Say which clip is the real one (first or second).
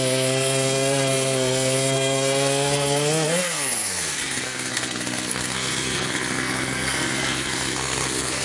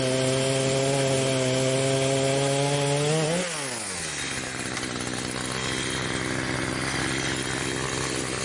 second